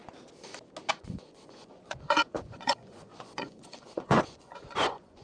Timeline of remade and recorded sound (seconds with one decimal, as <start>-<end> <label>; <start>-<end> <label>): 0.0-0.9 recorded; 0.9-5.2 remade